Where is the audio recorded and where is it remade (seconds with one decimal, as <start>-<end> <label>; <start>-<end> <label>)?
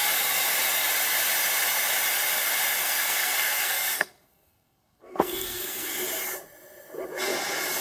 0.0-2.8 recorded; 2.8-5.9 remade; 5.9-7.8 recorded